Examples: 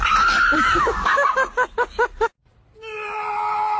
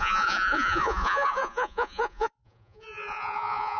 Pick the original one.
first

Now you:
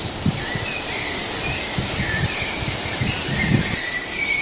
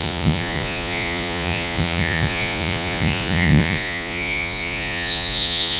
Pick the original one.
first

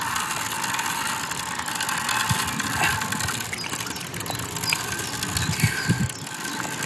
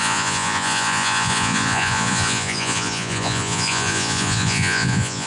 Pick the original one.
first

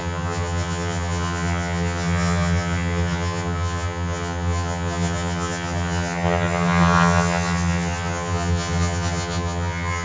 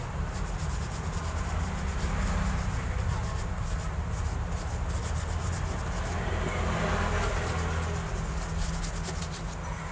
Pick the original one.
second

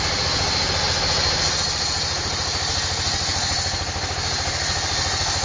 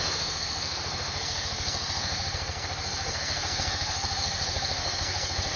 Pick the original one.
first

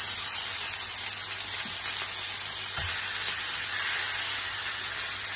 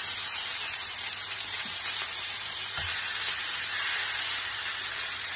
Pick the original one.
first